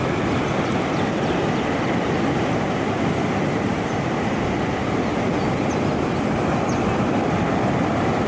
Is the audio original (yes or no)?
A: yes